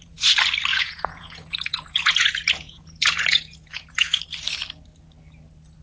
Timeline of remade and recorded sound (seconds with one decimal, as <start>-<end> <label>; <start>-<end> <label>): 0.0-0.7 recorded; 0.7-4.2 remade; 4.2-5.8 recorded